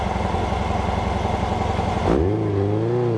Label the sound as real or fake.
real